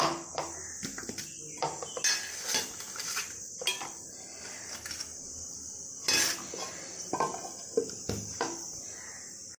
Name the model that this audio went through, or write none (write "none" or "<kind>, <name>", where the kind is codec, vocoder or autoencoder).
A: none